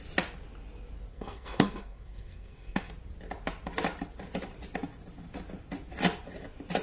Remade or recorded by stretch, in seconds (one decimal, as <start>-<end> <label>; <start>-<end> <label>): 0.0-1.1 recorded; 1.1-2.9 remade; 2.9-6.8 recorded